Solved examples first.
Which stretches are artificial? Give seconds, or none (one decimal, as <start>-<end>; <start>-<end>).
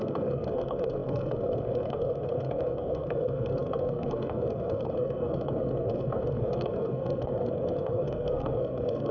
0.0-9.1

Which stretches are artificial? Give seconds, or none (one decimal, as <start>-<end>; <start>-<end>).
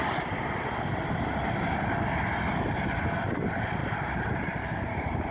3.8-4.8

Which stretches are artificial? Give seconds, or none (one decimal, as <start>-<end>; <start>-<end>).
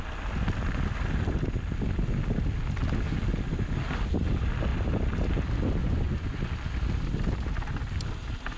5.8-6.4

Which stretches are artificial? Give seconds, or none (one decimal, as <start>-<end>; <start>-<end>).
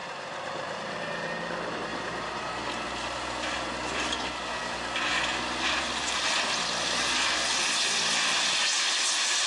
0.0-1.3; 1.9-2.5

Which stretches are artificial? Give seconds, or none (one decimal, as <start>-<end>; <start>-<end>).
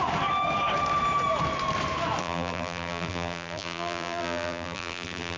2.2-5.4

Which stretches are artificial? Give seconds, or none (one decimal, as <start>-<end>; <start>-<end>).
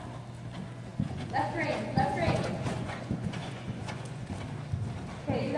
0.9-4.3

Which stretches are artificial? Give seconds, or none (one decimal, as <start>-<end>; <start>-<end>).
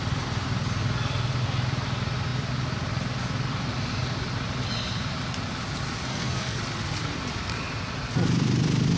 6.1-6.6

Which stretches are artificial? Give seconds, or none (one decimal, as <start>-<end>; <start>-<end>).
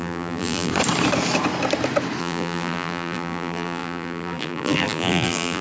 0.0-0.7; 2.2-5.6